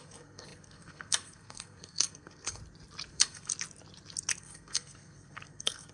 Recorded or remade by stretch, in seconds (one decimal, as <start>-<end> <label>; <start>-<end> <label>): 0.0-2.6 remade; 2.6-3.1 recorded; 3.1-3.5 remade; 3.5-4.4 recorded; 4.4-5.9 remade